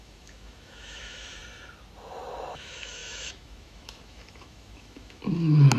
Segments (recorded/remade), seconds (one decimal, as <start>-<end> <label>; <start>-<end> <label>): 0.0-1.4 remade; 1.4-2.5 recorded; 2.5-5.2 remade; 5.2-5.8 recorded